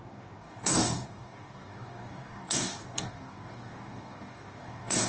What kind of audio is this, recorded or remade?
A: remade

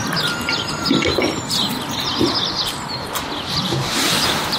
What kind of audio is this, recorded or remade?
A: recorded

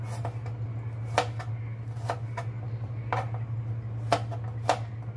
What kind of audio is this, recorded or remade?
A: recorded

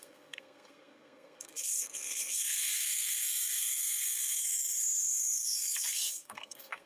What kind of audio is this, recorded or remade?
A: remade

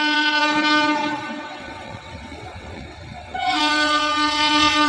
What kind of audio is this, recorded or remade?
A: remade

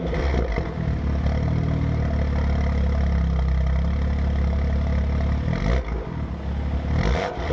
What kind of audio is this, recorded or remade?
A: recorded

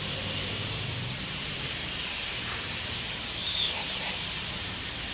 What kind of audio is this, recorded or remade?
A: remade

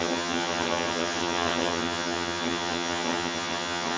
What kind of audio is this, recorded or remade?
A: remade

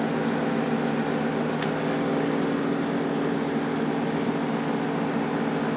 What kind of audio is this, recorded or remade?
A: recorded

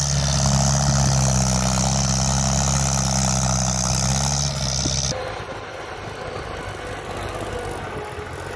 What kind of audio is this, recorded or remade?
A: recorded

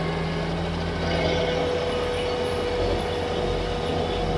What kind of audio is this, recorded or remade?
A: recorded